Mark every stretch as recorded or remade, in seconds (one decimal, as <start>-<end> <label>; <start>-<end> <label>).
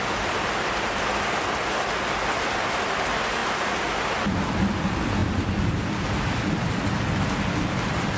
0.0-8.2 recorded